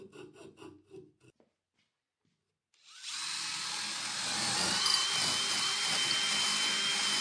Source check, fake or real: real